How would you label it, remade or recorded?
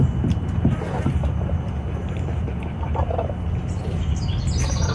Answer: recorded